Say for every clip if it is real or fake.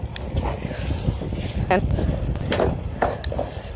real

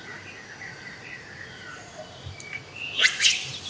real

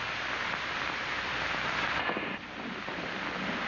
fake